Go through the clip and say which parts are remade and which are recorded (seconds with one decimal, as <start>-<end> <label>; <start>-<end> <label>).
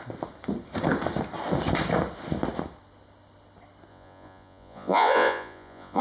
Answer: 0.0-3.9 recorded; 3.9-6.0 remade